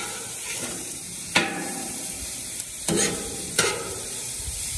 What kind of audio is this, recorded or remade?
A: remade